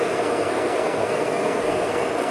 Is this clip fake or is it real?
fake